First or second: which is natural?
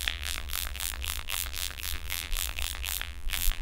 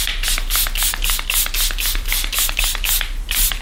second